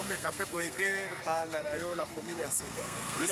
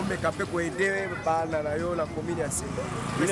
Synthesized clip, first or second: first